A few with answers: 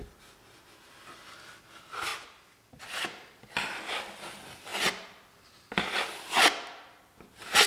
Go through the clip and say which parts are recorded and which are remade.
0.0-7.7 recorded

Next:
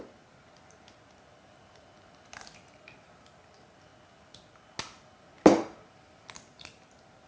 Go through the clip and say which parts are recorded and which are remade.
0.0-7.3 recorded